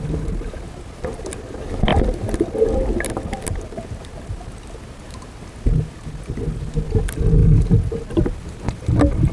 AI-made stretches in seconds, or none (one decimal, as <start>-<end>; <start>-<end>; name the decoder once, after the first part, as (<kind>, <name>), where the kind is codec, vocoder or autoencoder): none